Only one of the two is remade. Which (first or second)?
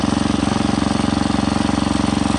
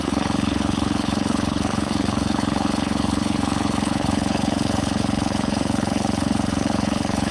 second